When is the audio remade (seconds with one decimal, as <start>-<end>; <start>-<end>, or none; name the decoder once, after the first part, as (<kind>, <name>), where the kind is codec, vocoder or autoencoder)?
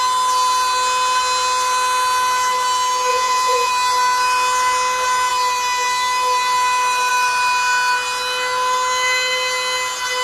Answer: 3.1-3.7 (vocoder, Vocos)